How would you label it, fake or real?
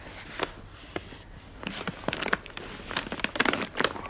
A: real